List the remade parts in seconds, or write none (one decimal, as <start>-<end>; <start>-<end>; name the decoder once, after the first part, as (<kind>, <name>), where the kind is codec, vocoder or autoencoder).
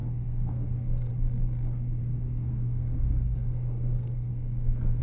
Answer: 0.0-1.1 (codec, SNAC); 2.0-5.0